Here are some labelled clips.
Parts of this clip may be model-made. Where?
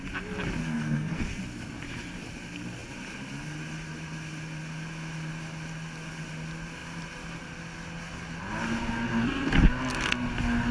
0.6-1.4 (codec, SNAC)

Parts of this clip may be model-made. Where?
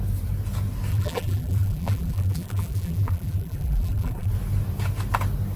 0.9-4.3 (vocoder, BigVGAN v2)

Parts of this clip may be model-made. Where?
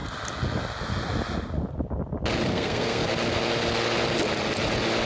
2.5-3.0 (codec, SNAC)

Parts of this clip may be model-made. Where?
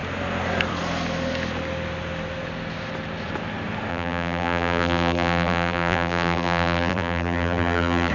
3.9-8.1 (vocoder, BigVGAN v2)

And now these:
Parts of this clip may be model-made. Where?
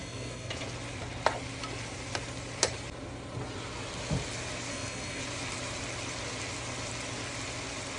0.0-0.5 (codec, SNAC); 4.7-5.2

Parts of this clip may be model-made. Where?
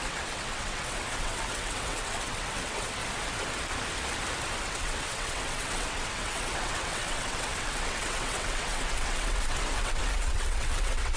0.0-3.0 (vocoder, WaveNeXt); 4.6-11.2